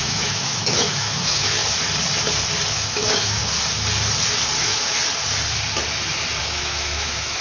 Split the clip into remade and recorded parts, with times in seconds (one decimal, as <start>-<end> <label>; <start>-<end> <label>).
0.0-1.6 remade; 1.6-2.7 recorded; 2.7-3.4 remade; 3.4-4.6 recorded; 4.6-5.0 remade; 5.0-6.4 recorded; 6.4-7.4 remade